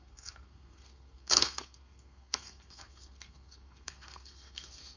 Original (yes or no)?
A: no